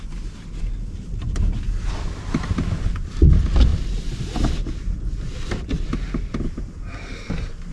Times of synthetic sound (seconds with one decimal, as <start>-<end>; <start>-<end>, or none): none